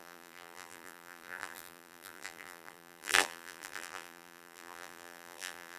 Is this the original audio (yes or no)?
no